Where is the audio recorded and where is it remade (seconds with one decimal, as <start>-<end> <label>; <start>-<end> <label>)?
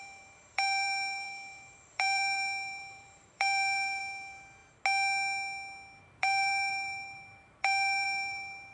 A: 0.0-4.6 remade; 4.6-6.0 recorded; 6.0-8.7 remade